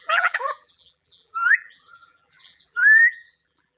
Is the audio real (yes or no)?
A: no